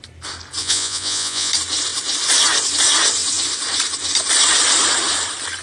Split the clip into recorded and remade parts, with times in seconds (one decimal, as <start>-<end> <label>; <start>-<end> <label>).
0.0-0.6 recorded; 0.6-1.5 remade; 1.5-5.6 recorded